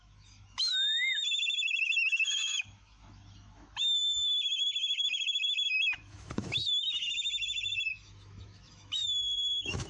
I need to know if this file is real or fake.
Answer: fake